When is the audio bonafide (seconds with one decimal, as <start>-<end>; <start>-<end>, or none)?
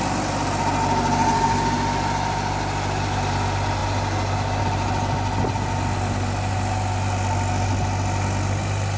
0.0-9.0